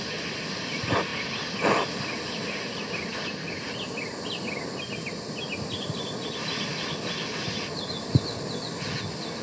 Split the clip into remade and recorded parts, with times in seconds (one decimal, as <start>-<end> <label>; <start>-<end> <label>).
0.0-9.4 recorded